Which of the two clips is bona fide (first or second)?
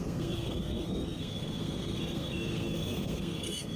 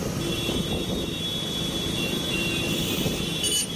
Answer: second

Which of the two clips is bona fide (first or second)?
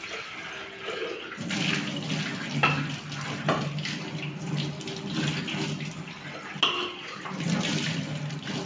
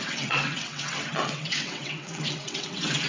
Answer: first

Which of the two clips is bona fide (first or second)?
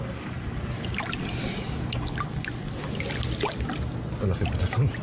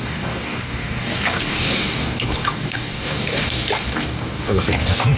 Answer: first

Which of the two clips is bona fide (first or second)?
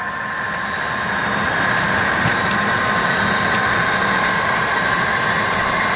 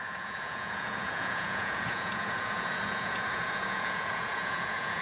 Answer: first